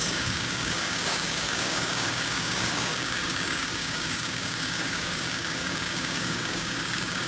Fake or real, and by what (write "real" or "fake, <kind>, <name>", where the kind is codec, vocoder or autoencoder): fake, codec, DAC